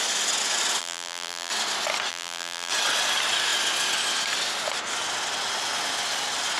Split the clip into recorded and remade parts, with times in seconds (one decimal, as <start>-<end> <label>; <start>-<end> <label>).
0.0-0.8 recorded; 0.8-1.5 remade; 1.5-2.1 recorded; 2.1-2.7 remade; 2.7-6.6 recorded